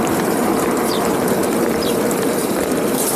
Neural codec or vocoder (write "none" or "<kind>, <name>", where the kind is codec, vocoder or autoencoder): vocoder, BigVGAN v2